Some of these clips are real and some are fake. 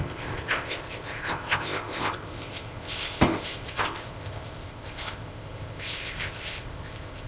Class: fake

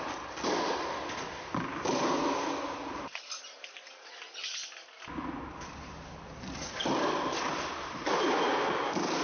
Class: real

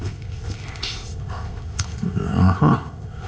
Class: fake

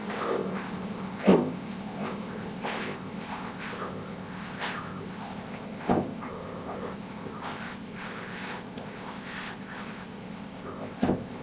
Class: fake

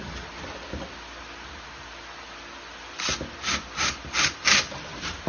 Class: real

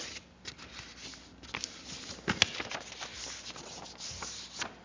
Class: real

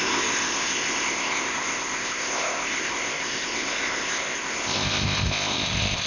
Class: fake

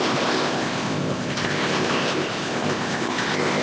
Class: fake